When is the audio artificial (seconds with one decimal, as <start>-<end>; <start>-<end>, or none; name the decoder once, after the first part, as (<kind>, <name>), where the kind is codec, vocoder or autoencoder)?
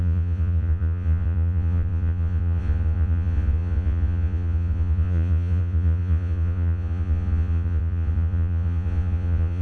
0.0-9.6 (vocoder, Vocos)